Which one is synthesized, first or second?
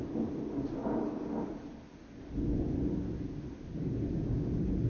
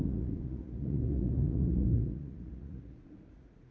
second